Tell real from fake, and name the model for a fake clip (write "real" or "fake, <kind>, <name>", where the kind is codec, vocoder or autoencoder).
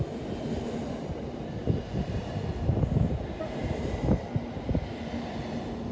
real